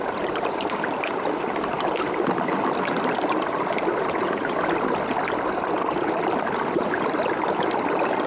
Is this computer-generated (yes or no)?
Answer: no